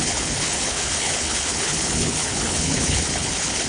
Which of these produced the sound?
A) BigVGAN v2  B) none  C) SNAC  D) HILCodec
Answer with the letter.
D